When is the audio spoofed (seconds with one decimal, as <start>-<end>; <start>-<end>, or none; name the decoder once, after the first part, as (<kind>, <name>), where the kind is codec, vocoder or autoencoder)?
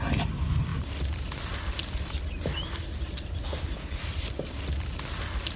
0.7-3.1 (vocoder, BigVGAN v2)